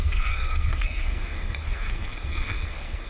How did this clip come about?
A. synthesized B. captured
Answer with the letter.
A